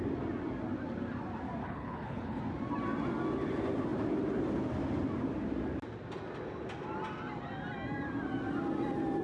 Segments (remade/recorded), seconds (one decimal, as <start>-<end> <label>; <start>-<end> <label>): 0.0-1.6 recorded; 1.6-2.4 remade; 2.4-9.2 recorded